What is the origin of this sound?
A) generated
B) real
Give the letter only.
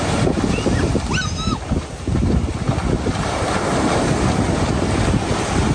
B